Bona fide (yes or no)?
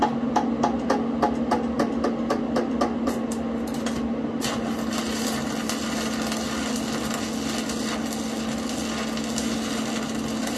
yes